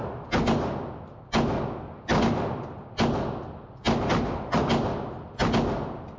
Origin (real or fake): real